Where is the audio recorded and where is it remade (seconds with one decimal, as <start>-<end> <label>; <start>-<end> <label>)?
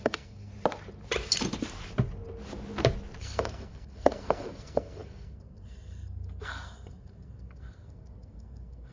0.0-0.5 remade; 0.5-3.2 recorded; 3.2-8.9 remade